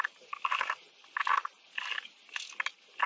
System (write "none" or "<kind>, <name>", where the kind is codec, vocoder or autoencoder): none